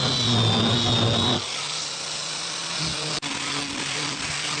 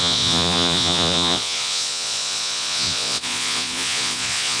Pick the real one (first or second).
first